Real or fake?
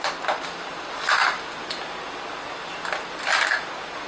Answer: real